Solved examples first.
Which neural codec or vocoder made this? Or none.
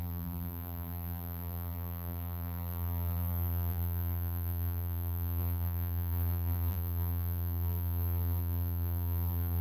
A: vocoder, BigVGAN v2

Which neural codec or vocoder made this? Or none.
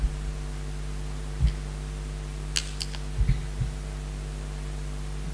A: none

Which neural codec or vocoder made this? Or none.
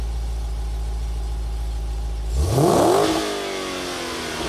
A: none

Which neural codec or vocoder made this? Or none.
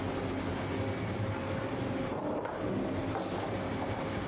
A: none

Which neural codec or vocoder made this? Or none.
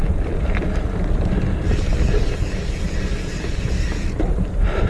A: vocoder, BigVGAN v2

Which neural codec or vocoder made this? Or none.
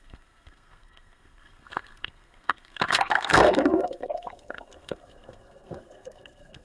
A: codec, SNAC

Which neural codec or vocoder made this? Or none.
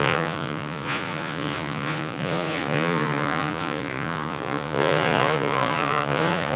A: vocoder, Vocos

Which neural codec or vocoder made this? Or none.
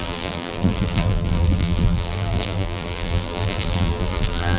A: vocoder, BigVGAN v2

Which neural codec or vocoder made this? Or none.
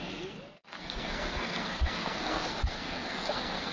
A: codec, SNAC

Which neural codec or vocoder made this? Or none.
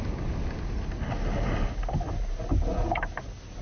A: none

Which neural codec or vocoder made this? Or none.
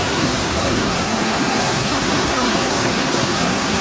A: codec, SNAC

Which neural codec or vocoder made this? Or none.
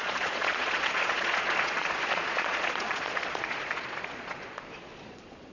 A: vocoder, Vocos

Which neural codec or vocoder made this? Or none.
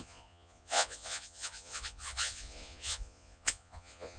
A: vocoder, Vocos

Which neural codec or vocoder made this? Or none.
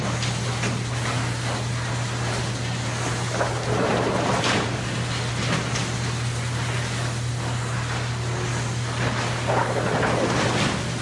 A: none